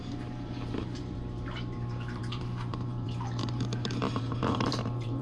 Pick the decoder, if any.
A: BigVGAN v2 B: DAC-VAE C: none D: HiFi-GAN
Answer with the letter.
A